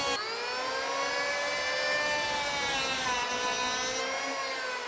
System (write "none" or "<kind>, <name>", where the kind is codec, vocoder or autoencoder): none